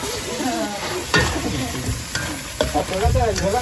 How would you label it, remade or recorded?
remade